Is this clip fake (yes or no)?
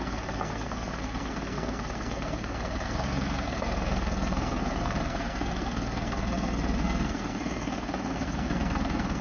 yes